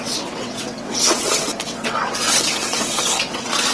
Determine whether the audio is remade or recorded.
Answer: remade